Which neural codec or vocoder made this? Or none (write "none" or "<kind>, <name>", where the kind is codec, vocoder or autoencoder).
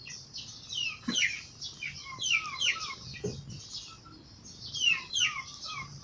none